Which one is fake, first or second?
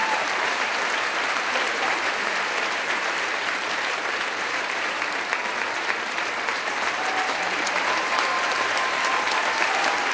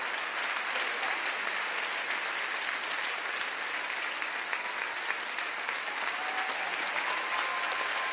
first